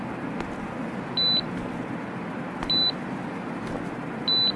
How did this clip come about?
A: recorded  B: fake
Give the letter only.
A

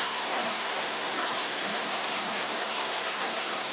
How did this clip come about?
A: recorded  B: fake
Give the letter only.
B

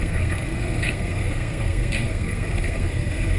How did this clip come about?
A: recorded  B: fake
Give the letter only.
B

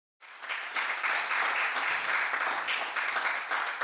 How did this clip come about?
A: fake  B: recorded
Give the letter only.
B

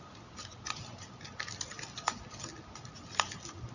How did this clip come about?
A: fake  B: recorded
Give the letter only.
B